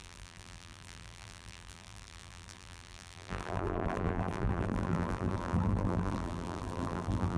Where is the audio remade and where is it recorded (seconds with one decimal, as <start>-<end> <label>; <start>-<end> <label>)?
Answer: 0.0-7.4 remade